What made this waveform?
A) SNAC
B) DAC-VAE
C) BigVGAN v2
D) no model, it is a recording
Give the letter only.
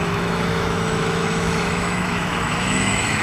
B